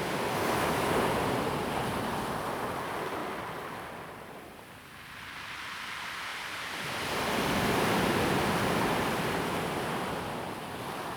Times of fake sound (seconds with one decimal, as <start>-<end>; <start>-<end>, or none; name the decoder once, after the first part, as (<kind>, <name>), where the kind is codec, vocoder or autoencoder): none